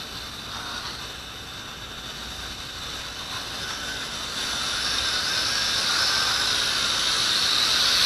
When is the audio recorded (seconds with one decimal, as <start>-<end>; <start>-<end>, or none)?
0.0-0.5; 1.0-8.1